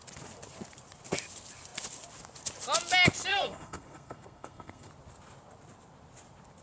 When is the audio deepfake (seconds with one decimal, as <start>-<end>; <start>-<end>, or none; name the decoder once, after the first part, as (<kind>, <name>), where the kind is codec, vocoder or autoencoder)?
3.3-4.9 (codec, SNAC)